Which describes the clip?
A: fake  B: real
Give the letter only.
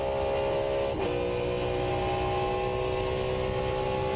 B